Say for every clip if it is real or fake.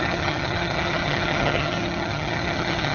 fake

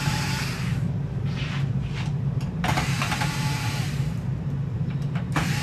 fake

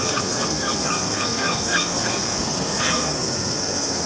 fake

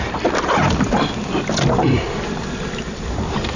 real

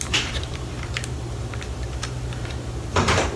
fake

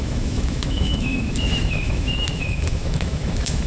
fake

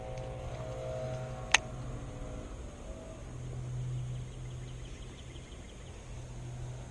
real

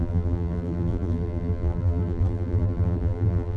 fake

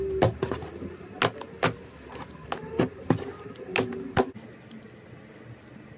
real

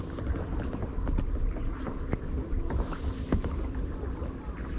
real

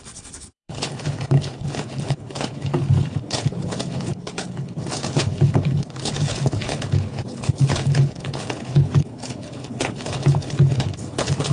fake